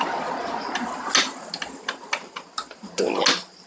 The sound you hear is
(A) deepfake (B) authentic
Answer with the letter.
B